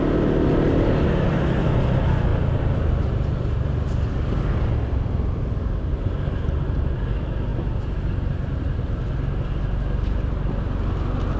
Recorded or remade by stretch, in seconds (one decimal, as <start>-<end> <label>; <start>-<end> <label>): 0.0-11.4 recorded

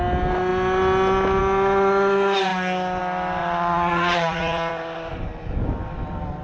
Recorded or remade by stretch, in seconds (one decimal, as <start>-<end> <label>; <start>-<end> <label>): 0.0-3.4 recorded; 3.4-4.7 remade; 4.7-6.4 recorded

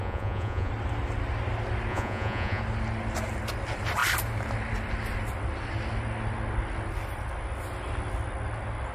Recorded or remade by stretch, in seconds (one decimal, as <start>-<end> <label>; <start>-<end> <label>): 0.0-0.7 remade; 0.7-1.9 recorded; 1.9-2.6 remade; 2.6-8.9 recorded

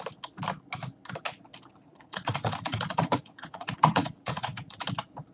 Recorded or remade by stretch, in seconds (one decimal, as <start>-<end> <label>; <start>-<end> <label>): 0.0-1.8 recorded; 1.8-4.8 remade; 4.8-5.3 recorded

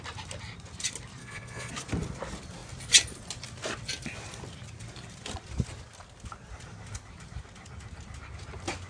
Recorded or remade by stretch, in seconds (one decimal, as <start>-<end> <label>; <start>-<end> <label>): 0.0-1.2 recorded; 1.2-1.7 remade; 1.7-8.9 recorded

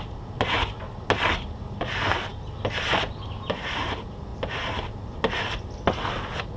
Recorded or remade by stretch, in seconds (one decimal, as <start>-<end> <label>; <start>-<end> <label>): 0.0-6.6 recorded